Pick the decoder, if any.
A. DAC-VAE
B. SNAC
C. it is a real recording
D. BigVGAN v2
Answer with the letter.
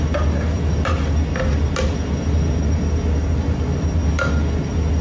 C